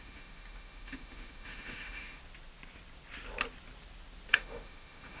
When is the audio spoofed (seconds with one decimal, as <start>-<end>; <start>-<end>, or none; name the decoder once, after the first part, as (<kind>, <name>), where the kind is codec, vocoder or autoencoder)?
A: 0.0-2.2 (autoencoder, DAC-VAE); 4.3-5.2